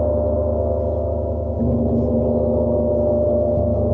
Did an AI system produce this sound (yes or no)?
no